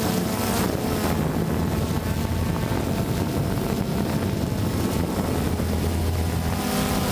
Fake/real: real